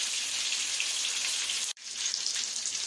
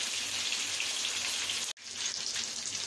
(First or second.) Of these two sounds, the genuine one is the second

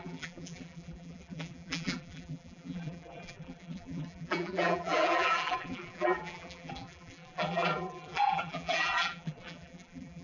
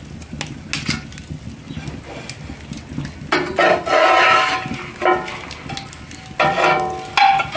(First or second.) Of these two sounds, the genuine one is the second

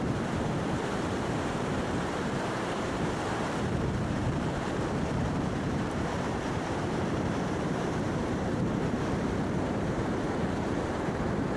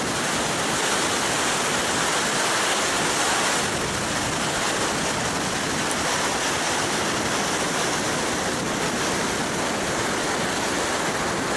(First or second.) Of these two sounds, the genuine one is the second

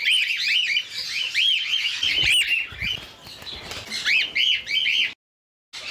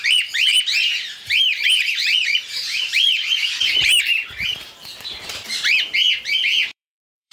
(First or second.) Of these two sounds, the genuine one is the first